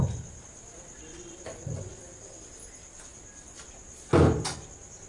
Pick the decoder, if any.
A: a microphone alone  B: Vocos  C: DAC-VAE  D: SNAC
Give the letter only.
A